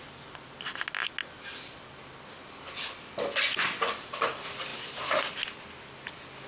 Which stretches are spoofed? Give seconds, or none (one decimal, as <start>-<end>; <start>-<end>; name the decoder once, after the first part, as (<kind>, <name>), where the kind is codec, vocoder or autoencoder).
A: none